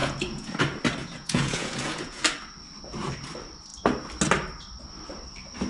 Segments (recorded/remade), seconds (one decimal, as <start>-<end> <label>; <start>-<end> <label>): 0.0-0.6 remade; 0.6-1.0 recorded; 1.0-2.2 remade; 2.2-5.7 recorded